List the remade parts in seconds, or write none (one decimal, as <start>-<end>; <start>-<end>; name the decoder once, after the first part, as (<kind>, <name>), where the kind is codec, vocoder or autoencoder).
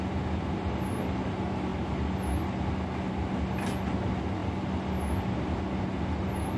none